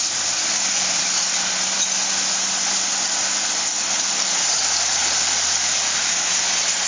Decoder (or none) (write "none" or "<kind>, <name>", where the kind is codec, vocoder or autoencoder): none